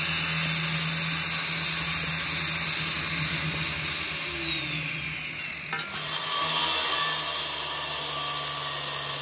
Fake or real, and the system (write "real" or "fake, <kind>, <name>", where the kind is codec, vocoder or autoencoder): real